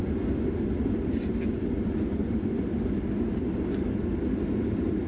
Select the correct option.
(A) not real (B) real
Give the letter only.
B